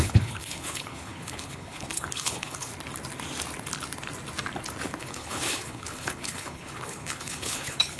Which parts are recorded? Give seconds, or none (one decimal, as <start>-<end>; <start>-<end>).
2.7-5.0